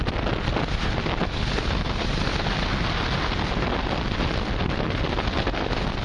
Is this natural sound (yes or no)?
yes